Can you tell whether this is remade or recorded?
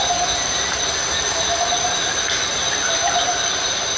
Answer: recorded